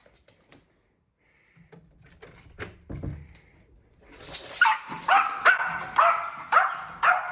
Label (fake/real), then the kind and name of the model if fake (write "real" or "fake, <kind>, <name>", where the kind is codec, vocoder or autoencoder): real